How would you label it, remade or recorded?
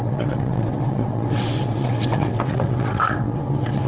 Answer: remade